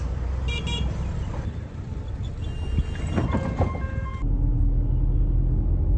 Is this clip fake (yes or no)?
no